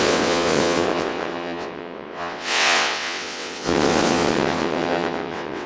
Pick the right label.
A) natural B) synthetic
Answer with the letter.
B